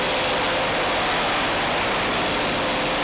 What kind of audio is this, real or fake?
real